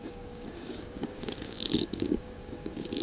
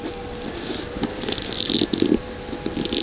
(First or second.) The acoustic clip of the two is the second